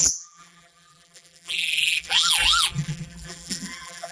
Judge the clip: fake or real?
fake